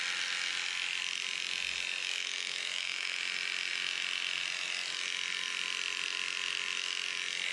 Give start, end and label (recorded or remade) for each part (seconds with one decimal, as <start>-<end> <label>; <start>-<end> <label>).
0.0-2.0 recorded; 2.0-3.2 remade; 3.2-7.5 recorded